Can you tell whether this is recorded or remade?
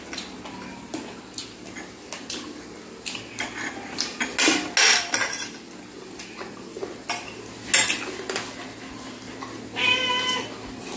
recorded